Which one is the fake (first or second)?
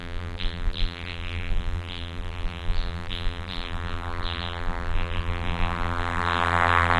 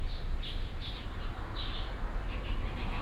first